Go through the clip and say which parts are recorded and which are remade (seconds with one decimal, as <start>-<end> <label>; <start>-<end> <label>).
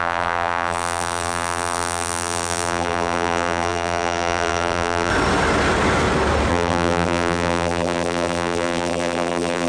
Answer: 0.0-5.1 remade; 5.1-6.5 recorded; 6.5-9.7 remade